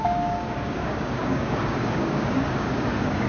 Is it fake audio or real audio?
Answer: fake